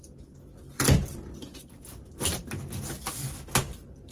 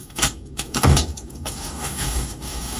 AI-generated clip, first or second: second